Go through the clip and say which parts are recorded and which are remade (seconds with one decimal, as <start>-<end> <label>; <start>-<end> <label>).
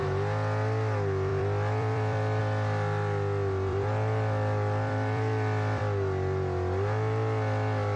0.0-1.3 recorded; 1.3-2.4 remade; 2.4-3.7 recorded; 3.7-5.8 remade; 5.8-8.0 recorded